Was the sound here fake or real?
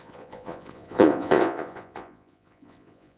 fake